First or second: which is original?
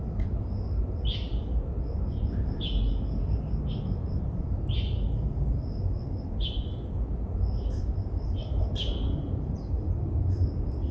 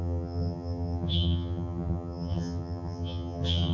first